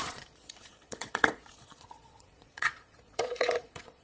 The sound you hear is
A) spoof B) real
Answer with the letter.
A